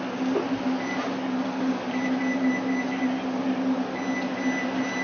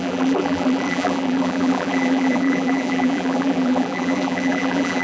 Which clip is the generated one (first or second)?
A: second